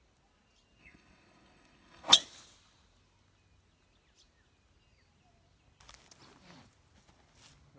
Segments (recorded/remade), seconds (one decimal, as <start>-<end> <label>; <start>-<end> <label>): 0.0-0.8 recorded; 0.8-2.1 remade; 2.1-7.8 recorded